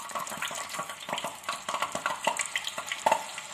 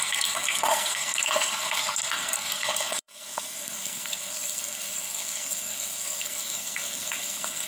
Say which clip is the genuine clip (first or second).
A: first